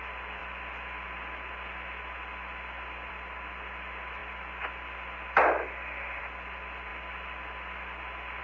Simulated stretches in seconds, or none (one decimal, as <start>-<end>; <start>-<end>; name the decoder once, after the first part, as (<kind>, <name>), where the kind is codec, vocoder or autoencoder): none